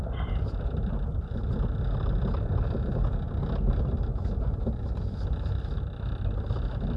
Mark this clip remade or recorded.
recorded